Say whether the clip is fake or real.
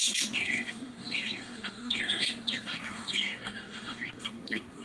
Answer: fake